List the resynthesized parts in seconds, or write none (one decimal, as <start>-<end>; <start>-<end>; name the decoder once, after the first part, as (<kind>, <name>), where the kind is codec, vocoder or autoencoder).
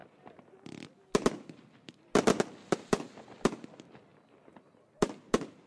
none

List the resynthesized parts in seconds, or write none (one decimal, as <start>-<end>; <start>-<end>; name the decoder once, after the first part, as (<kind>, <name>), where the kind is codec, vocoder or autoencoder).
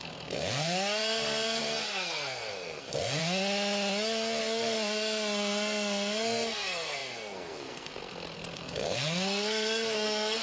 0.0-3.2 (codec, SNAC); 4.4-10.4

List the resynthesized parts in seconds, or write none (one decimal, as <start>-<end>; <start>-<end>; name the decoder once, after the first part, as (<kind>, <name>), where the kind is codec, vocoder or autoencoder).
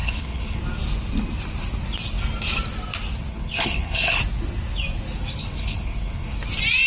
0.0-0.6 (codec, HILCodec); 3.3-4.2; 5.4-6.3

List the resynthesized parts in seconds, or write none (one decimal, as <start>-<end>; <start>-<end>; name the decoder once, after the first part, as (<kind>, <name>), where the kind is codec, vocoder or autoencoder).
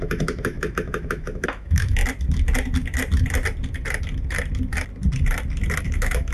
0.0-2.0 (autoencoder, DAC-VAE); 5.8-6.3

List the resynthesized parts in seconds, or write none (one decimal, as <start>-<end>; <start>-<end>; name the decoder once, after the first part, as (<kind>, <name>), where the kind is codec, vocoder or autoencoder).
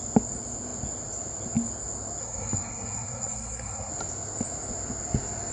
2.2-3.9 (codec, SNAC)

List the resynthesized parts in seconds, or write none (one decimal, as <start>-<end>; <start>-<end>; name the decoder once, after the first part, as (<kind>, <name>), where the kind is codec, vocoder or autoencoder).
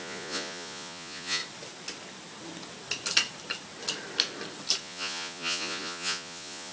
0.0-1.4 (vocoder, Vocos); 4.8-6.7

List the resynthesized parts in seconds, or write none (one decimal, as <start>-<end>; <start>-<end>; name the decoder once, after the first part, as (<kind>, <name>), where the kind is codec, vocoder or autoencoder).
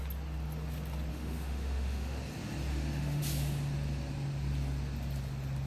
1.1-2.2 (autoencoder, DAC-VAE); 2.7-3.2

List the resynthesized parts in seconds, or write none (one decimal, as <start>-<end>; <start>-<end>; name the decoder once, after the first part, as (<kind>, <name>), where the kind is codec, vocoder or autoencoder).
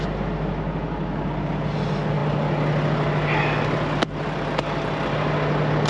none